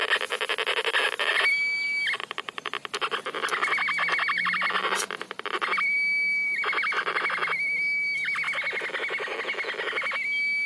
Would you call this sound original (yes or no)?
yes